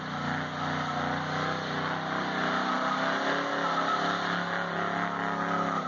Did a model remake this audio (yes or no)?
no